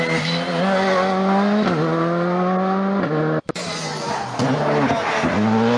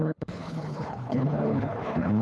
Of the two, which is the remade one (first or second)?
second